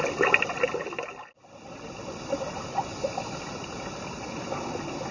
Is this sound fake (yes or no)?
no